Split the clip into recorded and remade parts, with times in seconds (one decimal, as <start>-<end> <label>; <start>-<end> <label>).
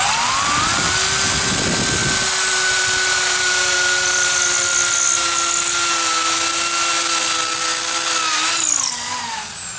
0.0-9.8 recorded